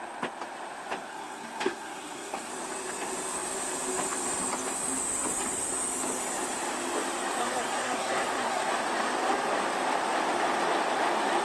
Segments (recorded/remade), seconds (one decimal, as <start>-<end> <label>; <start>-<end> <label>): 0.0-1.1 recorded; 1.1-2.5 remade; 2.5-7.4 recorded; 7.4-8.7 remade; 8.7-11.4 recorded